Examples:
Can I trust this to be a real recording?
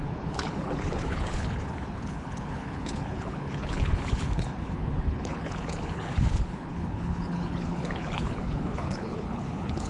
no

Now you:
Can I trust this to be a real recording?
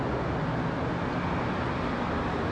yes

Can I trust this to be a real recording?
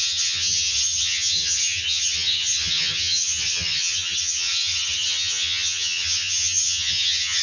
no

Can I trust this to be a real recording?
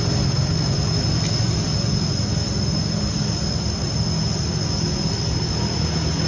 yes